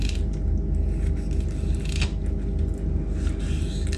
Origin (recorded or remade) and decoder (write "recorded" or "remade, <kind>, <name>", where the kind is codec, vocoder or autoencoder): recorded